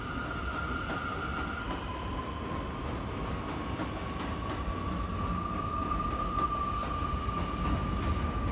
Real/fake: real